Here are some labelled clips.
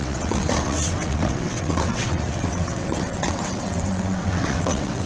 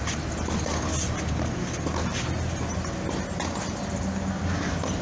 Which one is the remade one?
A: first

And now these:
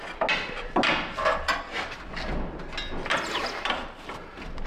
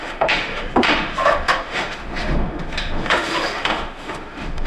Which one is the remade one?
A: second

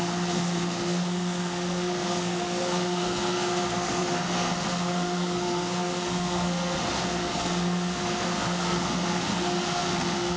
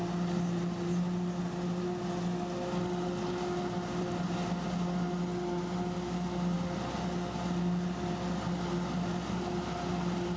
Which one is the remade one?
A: first